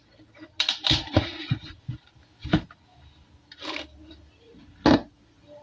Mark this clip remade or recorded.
recorded